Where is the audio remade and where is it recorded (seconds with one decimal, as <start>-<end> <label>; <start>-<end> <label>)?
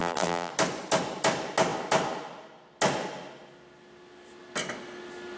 0.0-0.5 remade; 0.5-5.4 recorded